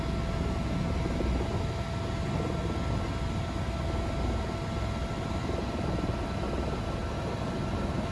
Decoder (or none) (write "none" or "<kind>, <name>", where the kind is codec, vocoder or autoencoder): none